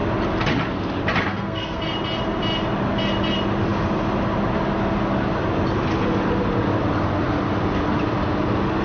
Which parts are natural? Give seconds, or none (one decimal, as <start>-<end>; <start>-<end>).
0.0-1.3; 1.8-8.8